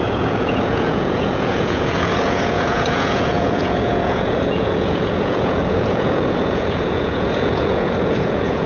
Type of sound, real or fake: fake